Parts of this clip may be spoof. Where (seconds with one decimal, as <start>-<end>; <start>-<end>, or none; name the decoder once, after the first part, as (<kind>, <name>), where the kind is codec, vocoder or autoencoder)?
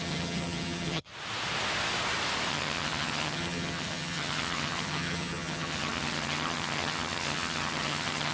0.0-1.1 (vocoder, HiFi-GAN); 2.5-8.3